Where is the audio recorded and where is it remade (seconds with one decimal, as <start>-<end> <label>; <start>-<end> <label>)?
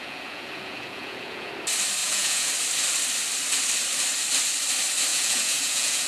0.0-1.5 remade; 1.5-2.0 recorded; 2.0-2.5 remade; 2.5-5.1 recorded; 5.1-6.1 remade